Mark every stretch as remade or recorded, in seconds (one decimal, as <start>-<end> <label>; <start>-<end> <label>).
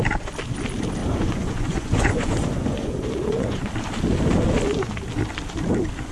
0.0-1.0 recorded; 1.0-3.7 remade; 3.7-6.1 recorded